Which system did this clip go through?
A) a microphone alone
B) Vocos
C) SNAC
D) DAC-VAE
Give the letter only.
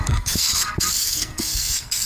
C